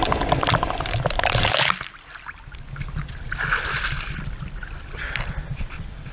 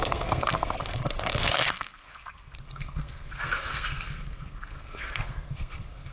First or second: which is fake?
second